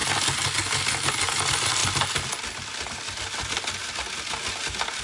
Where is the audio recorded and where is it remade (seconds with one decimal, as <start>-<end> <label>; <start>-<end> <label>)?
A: 0.0-5.0 recorded